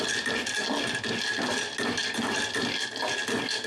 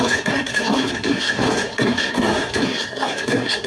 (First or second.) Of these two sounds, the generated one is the second